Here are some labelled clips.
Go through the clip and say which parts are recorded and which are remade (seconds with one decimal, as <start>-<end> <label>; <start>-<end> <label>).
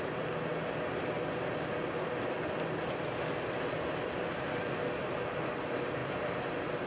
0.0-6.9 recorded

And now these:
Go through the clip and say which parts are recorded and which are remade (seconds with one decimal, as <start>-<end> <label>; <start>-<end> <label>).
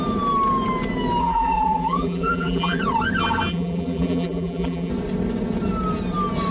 0.0-1.2 recorded; 1.2-2.8 remade; 2.8-3.5 recorded; 3.5-4.9 remade; 4.9-6.5 recorded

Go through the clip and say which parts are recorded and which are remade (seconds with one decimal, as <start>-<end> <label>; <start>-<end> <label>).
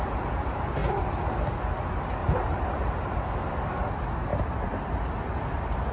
0.0-2.2 recorded; 2.2-2.7 remade; 2.7-4.3 recorded; 4.3-5.1 remade; 5.1-5.9 recorded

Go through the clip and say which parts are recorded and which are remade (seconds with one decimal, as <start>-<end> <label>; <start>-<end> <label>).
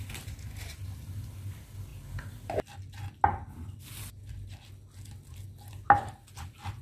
0.0-6.8 recorded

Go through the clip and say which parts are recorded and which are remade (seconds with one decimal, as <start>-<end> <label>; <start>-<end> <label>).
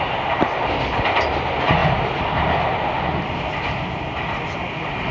0.0-5.1 recorded